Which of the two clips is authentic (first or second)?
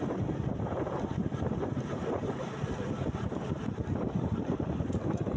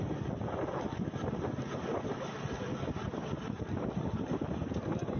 second